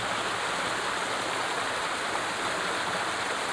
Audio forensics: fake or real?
real